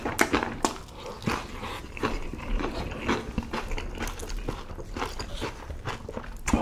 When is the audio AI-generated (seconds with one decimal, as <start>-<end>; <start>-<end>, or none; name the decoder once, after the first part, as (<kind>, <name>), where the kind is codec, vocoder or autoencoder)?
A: 2.3-2.9 (vocoder, BigVGAN v2); 5.3-5.9